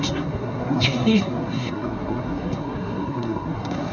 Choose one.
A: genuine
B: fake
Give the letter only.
B